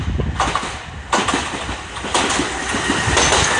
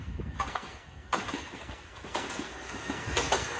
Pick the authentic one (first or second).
first